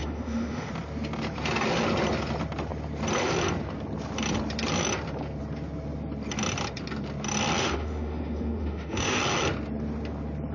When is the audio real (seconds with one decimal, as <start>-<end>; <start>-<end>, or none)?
0.7-7.6; 9.2-10.5